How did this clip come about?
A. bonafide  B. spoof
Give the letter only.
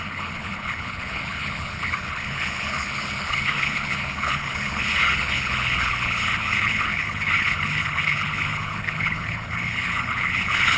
B